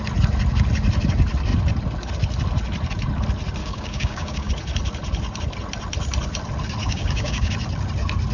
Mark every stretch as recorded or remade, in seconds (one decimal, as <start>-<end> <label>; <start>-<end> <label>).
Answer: 0.0-3.6 recorded; 3.6-4.5 remade; 4.5-6.8 recorded; 6.8-7.5 remade; 7.5-8.3 recorded